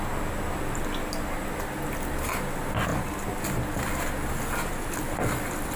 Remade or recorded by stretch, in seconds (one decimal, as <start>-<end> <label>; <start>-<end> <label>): 0.0-5.8 recorded